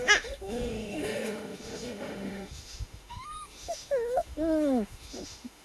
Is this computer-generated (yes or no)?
yes